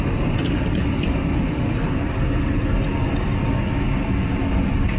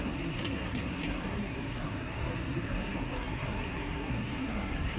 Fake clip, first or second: second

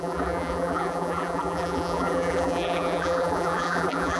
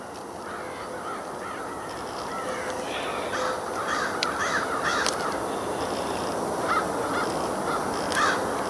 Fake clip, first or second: first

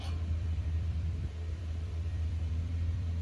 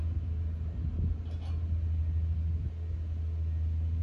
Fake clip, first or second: first